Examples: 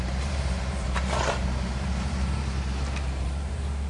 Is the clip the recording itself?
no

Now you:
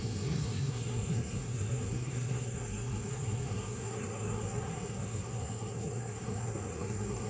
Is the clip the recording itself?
no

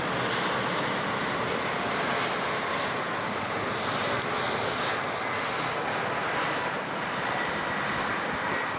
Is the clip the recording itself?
yes